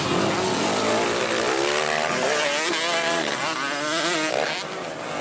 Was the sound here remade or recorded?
recorded